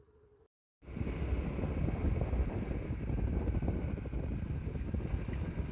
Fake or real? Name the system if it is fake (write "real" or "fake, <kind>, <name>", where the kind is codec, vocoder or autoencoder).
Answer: real